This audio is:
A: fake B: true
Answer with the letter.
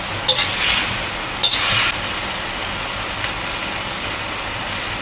B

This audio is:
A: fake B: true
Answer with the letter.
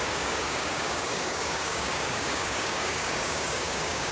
A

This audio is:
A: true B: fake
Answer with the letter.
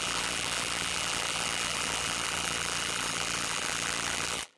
B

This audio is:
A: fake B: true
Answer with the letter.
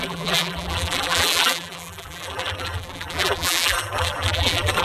A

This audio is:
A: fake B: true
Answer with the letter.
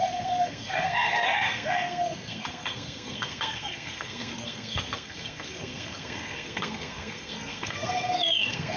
A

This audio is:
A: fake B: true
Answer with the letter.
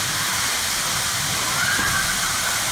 A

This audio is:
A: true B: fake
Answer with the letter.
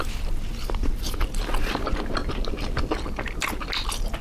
A